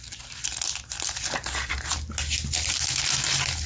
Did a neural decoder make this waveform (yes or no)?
no